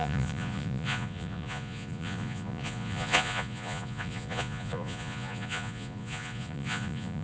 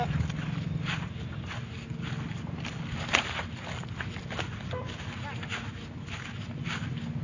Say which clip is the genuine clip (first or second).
second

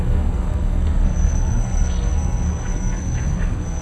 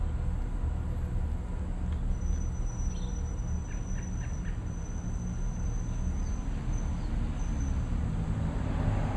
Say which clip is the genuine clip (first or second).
second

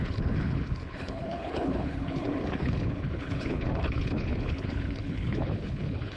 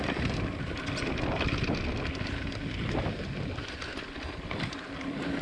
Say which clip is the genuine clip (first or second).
second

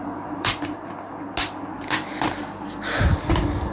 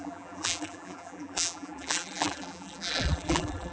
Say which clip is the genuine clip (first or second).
first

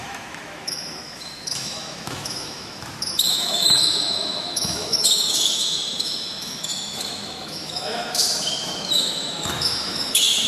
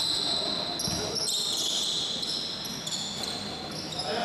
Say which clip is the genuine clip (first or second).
second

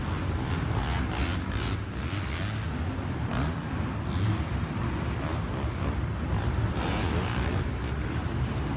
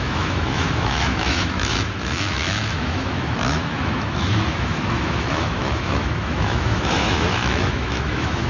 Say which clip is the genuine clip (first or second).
first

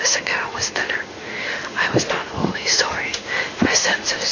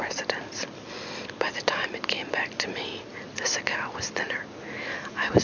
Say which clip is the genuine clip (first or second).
second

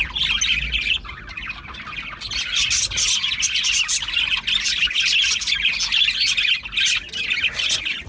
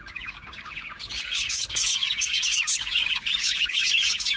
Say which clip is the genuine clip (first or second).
first